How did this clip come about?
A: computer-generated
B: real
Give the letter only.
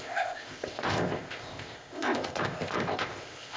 A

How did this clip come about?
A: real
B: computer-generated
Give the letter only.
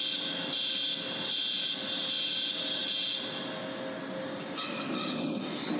A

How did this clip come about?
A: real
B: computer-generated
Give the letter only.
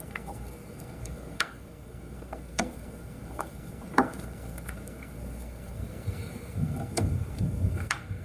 B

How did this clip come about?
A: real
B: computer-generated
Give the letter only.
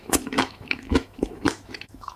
B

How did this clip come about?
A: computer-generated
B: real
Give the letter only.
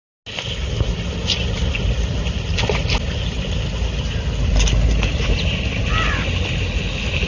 B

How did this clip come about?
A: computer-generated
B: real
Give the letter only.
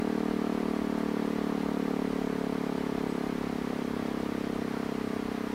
B